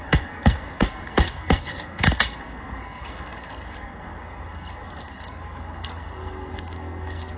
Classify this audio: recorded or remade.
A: remade